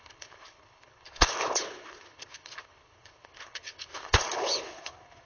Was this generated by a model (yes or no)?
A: yes